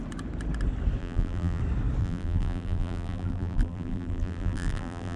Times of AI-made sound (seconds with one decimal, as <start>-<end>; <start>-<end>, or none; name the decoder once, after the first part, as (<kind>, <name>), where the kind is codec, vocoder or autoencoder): 1.0-1.6 (vocoder, BigVGAN v2); 2.0-5.2